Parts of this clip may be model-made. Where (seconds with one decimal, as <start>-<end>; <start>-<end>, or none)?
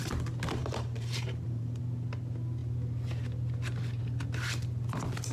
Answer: 0.6-1.8